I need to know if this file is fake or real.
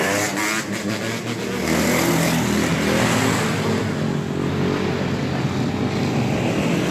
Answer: real